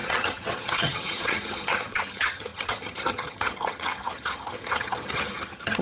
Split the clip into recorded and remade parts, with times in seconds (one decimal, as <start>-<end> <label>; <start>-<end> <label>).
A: 0.0-5.8 remade

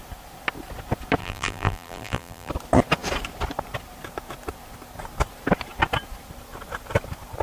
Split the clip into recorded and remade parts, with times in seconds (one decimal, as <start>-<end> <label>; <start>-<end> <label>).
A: 0.0-1.2 recorded; 1.2-2.5 remade; 2.5-7.4 recorded

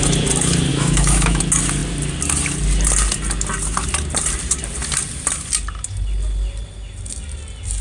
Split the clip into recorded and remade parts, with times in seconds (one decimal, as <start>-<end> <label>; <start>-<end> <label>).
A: 0.0-0.7 recorded; 0.7-1.4 remade; 1.4-7.8 recorded

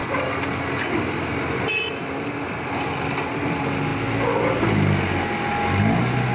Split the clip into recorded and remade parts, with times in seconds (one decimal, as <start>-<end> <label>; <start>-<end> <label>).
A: 0.0-6.3 recorded